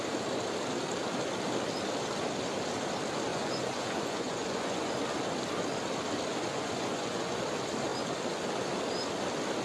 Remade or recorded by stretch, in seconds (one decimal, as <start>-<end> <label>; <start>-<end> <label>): 0.0-3.3 recorded; 3.3-4.9 remade; 4.9-6.3 recorded; 6.3-7.4 remade; 7.4-9.6 recorded